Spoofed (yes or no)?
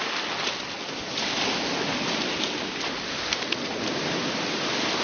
no